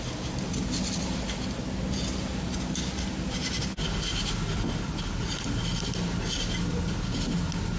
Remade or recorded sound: recorded